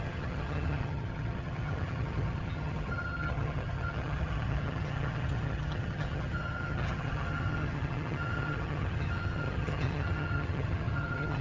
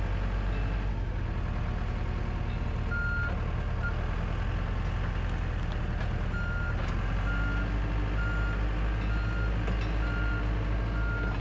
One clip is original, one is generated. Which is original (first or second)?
second